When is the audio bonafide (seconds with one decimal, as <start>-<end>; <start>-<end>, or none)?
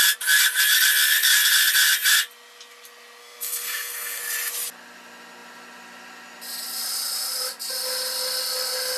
0.0-3.2; 4.2-9.0